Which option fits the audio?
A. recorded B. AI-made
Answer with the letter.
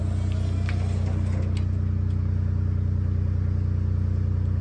A